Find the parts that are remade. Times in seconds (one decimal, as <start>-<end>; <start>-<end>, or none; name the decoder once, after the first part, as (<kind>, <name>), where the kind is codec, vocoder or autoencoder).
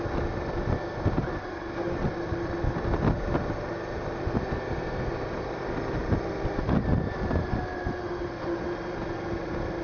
none